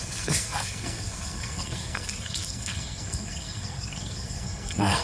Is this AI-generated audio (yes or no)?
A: yes